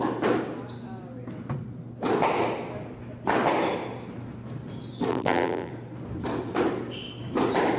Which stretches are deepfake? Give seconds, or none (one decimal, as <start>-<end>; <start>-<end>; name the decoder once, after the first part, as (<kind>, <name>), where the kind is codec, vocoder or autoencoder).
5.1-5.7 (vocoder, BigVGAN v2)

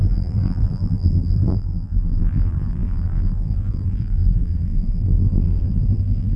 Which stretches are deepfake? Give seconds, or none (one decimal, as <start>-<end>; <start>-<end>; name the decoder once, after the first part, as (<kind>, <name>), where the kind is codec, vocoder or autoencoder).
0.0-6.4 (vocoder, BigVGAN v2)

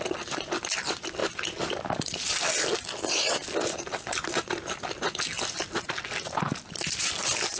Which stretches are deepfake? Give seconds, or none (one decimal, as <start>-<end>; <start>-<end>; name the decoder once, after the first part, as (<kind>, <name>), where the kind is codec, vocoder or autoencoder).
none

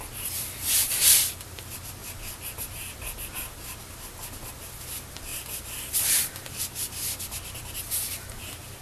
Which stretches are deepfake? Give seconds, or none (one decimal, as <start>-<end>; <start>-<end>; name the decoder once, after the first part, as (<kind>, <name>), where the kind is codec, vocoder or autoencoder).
0.8-1.3 (vocoder, BigVGAN v2); 5.3-6.6